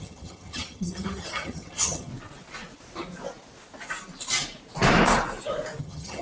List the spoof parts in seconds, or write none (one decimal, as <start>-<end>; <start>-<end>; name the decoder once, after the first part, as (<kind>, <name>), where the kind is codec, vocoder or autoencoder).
0.0-2.1 (vocoder, HiFi-GAN); 5.8-6.2